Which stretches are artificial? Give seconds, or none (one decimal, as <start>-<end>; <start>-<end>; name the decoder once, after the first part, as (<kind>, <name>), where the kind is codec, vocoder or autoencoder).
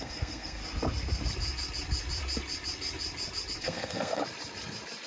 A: 0.0-0.6 (codec, SNAC); 3.6-4.2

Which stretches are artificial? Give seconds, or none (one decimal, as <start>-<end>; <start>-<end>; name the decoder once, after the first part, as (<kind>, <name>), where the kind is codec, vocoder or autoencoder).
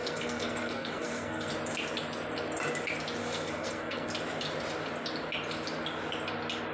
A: 0.0-1.5 (codec, SNAC); 3.2-4.1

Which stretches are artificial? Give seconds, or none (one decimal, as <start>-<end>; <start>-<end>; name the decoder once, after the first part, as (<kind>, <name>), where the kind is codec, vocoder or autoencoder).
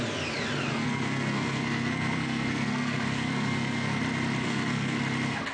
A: 0.7-4.0 (codec, SNAC); 4.4-5.0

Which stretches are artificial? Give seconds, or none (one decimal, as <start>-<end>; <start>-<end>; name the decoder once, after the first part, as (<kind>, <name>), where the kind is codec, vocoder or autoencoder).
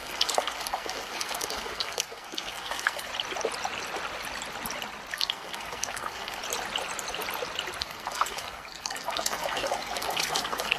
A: 0.0-3.1 (codec, SNAC); 5.1-6.4; 7.8-10.8